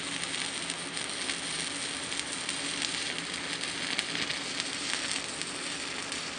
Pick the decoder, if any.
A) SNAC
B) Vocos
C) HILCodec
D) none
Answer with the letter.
D